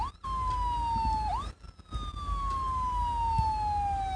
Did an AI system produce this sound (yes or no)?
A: no